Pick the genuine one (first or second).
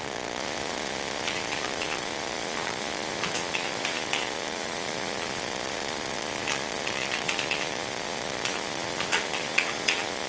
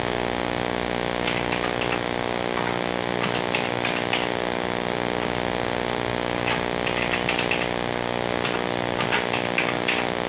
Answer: second